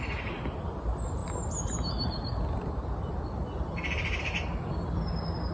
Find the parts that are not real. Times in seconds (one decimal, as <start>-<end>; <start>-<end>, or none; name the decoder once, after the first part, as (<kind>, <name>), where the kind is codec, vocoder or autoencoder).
none